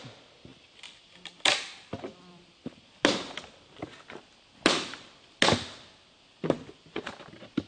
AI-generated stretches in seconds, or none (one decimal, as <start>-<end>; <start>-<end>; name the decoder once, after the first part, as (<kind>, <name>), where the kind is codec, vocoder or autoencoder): none